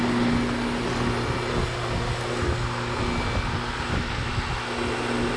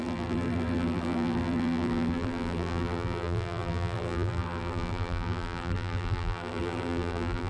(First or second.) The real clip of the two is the first